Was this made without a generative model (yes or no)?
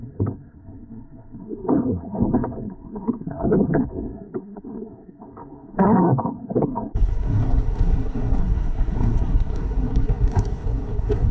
no